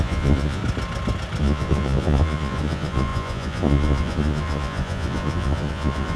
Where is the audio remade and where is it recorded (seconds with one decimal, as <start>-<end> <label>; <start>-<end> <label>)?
0.0-0.6 remade; 0.6-1.4 recorded; 1.4-6.2 remade